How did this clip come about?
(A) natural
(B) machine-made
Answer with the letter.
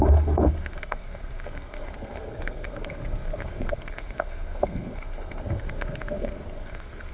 B